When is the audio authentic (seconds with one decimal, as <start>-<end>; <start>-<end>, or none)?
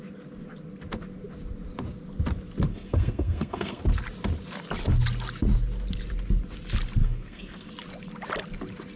0.0-2.7; 3.8-7.0; 7.7-9.0